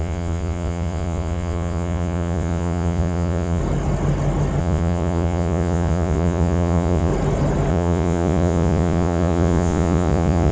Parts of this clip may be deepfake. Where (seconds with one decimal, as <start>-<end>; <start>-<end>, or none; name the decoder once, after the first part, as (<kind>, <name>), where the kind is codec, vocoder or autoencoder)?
0.0-3.6 (vocoder, Vocos); 4.6-7.1; 7.7-10.5

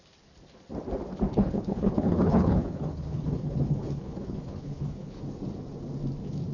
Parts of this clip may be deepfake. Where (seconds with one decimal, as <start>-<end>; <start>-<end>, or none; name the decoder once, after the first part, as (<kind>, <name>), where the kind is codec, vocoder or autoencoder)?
1.3-5.2 (codec, HILCodec)

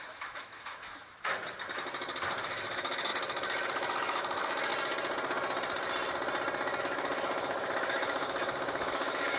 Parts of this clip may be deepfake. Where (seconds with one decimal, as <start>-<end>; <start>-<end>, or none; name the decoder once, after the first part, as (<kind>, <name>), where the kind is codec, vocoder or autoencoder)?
0.0-1.3 (autoencoder, DAC-VAE); 2.4-4.7; 6.8-9.4

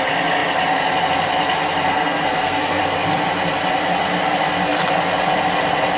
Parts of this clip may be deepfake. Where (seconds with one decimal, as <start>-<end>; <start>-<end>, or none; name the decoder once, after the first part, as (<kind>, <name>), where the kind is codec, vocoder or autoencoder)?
1.9-2.8 (codec, SNAC)

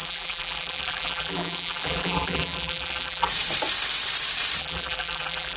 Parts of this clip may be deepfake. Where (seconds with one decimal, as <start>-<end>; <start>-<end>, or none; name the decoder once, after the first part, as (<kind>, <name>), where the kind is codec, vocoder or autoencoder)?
0.0-3.3 (vocoder, BigVGAN v2); 4.6-5.6